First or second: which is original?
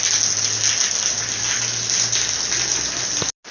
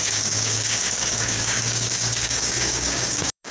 first